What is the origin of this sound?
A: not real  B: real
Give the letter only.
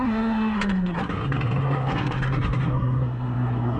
A